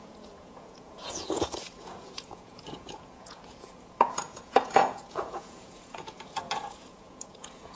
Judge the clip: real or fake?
fake